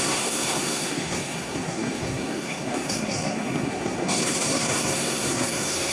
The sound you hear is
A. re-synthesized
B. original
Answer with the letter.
A